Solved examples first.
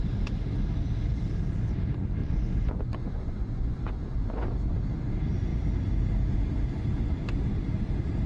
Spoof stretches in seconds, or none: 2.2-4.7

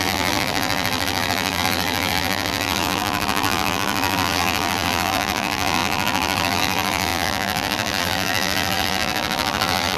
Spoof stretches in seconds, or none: 0.0-10.0

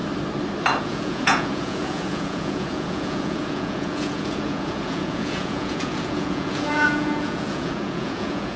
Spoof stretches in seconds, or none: 0.8-8.6

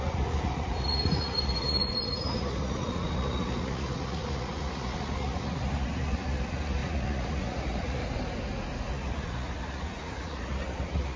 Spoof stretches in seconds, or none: 0.0-8.0; 8.9-11.2

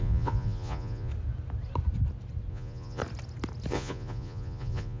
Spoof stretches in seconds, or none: 0.0-1.1; 2.5-3.0; 3.7-5.0